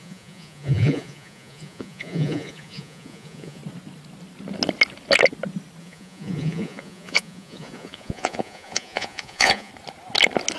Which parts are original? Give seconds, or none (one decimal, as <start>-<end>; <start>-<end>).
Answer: 3.6-5.8; 9.7-10.6